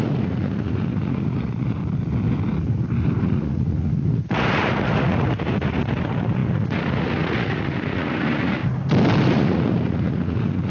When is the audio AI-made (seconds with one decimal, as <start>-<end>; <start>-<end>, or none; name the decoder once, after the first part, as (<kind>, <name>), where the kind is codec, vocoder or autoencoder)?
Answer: 0.0-1.8 (vocoder, Vocos); 3.2-8.6; 9.2-10.7